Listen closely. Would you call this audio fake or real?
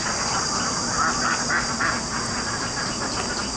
real